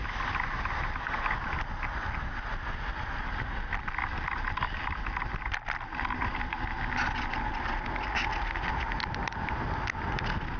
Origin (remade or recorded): recorded